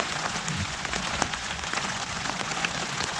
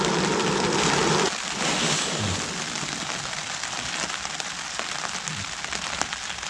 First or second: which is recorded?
second